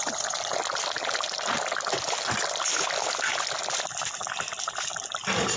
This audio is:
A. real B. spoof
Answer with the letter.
A